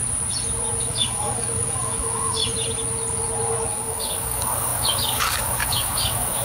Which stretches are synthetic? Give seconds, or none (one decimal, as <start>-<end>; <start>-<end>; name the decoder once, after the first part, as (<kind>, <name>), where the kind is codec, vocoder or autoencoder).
0.8-2.4 (codec, DAC); 3.7-6.4